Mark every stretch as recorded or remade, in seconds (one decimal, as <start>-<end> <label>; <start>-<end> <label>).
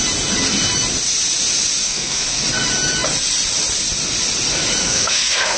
0.0-1.8 recorded; 1.8-2.4 remade; 2.4-4.8 recorded; 4.8-5.6 remade